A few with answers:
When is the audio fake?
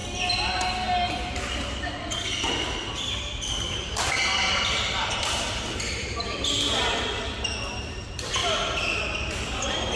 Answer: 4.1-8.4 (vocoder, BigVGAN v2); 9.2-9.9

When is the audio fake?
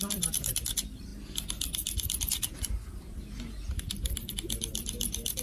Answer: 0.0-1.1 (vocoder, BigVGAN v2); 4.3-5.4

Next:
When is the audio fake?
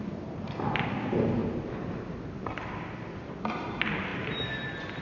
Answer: 0.0-1.4 (vocoder, BigVGAN v2); 1.9-5.0